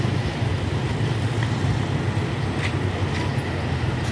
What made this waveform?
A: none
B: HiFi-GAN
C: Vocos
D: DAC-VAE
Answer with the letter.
A